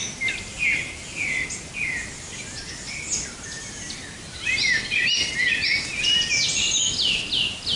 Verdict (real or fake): real